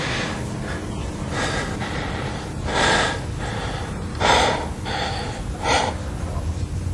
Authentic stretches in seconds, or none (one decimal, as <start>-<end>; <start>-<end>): 0.0-3.4; 5.7-6.9